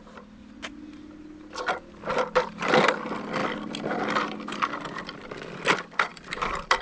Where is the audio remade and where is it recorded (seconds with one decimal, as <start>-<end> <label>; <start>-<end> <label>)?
0.0-0.4 remade; 0.4-2.1 recorded; 2.1-3.4 remade; 3.4-5.3 recorded; 5.3-6.8 remade